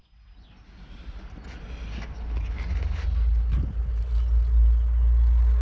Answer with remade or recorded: recorded